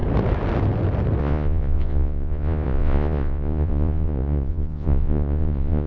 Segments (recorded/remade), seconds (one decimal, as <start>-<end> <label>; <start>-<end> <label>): 0.0-1.2 recorded; 1.2-5.9 remade